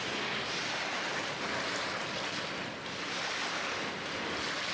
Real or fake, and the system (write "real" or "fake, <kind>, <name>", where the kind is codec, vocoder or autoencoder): real